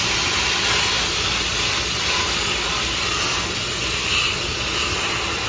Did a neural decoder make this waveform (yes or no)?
no